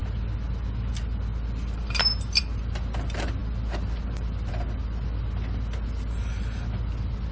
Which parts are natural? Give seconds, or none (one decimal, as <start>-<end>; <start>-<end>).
0.0-7.3